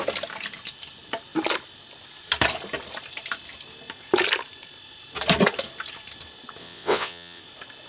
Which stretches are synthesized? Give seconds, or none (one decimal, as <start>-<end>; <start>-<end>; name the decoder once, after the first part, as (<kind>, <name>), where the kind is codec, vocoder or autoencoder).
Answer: 6.6-7.4 (vocoder, WaveNeXt)